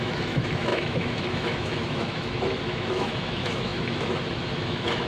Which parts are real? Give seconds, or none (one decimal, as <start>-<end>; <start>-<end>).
none